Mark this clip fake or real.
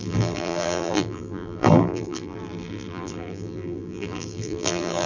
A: fake